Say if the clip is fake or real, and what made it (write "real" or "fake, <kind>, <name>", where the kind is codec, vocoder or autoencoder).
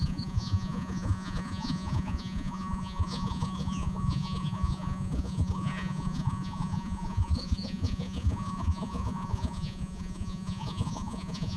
fake, vocoder, Vocos